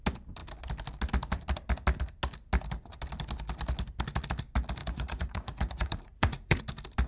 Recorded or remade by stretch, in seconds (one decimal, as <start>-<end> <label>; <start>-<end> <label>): 0.0-4.8 recorded; 4.8-6.6 remade; 6.6-7.1 recorded